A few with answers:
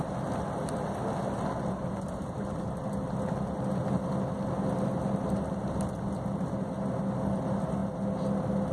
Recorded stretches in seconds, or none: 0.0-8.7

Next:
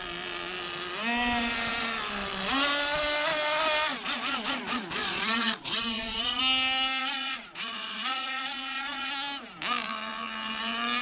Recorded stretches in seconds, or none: 0.0-3.9; 6.4-7.0; 9.1-11.0

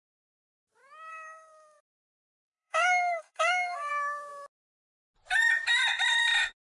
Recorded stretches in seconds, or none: 0.0-1.1; 3.9-6.8

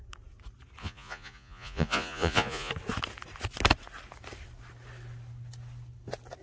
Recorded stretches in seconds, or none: 0.0-0.8; 2.7-6.4

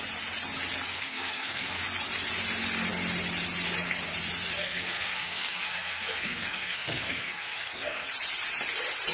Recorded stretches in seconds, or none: 0.0-0.9; 1.8-4.6; 8.1-9.1

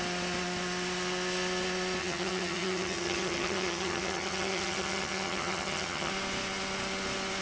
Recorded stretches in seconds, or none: 0.0-2.0; 6.1-7.4

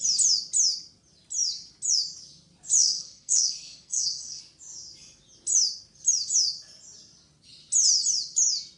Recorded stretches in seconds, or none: 0.0-2.8; 4.4-8.8

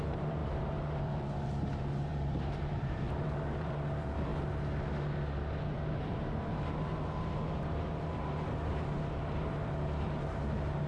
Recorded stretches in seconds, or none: 4.3-5.6